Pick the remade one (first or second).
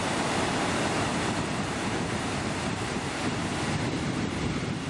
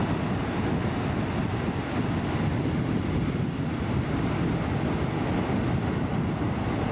first